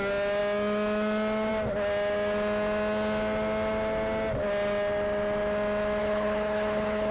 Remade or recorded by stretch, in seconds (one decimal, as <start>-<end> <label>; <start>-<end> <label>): 0.0-6.0 recorded; 6.0-7.1 remade